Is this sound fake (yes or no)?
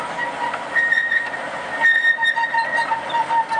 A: no